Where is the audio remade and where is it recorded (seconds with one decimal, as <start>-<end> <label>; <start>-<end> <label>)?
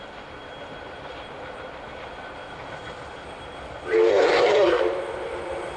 0.0-4.1 recorded; 4.1-4.8 remade; 4.8-5.8 recorded